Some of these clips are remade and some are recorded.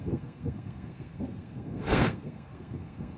remade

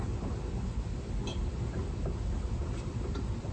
recorded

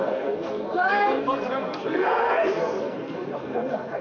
remade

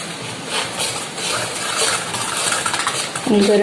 recorded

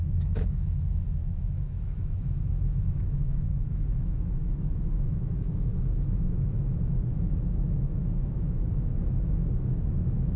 remade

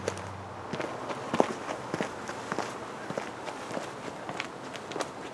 recorded